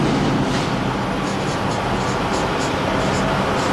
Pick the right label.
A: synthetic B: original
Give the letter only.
B